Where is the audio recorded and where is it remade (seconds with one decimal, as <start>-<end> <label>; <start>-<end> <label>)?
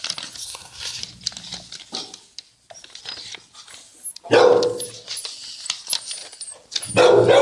0.0-0.4 recorded; 0.4-1.0 remade; 1.0-7.4 recorded